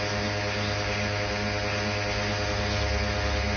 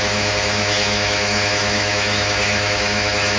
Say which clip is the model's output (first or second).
second